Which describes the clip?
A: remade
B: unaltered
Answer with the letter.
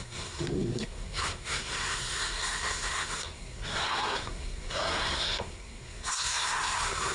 A